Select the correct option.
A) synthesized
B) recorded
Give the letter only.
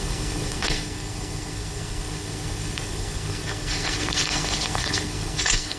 A